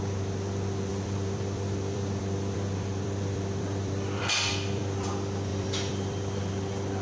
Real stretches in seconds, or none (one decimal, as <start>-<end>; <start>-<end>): 0.0-0.9; 5.1-5.5; 6.4-7.0